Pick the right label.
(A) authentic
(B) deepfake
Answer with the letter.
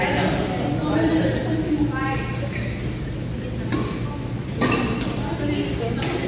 A